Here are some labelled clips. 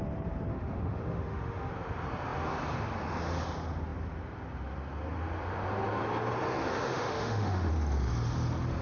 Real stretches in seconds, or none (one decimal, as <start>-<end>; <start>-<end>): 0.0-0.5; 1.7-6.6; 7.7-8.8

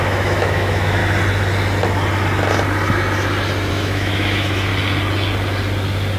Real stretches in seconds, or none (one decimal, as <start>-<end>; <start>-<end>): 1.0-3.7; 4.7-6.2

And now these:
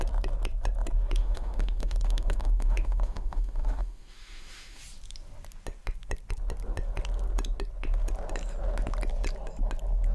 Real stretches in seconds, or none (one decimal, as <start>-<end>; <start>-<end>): 0.0-1.2; 4.8-10.1

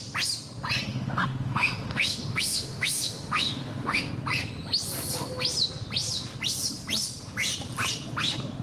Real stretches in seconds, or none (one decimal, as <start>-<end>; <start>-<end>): 0.0-0.9; 4.1-8.6

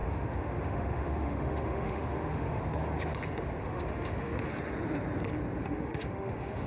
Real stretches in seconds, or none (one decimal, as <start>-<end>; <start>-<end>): 2.6-3.6; 4.5-5.6

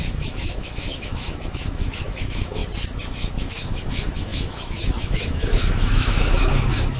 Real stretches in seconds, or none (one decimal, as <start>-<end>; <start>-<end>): 2.6-3.4

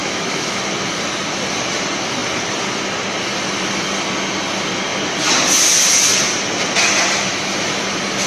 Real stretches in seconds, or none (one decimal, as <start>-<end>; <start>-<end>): 0.6-8.3